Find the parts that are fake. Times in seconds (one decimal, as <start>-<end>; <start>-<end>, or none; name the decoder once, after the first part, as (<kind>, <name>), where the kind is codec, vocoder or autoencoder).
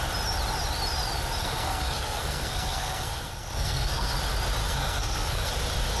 1.4-4.1 (codec, SNAC); 4.6-5.5